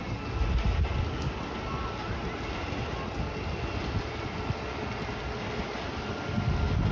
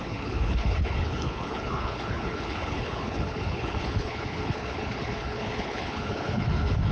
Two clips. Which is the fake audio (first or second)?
second